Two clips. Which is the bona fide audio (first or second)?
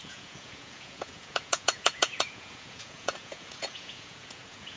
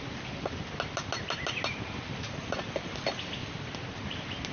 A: second